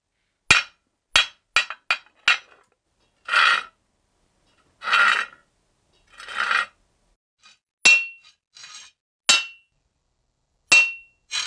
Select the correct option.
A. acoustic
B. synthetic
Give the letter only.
A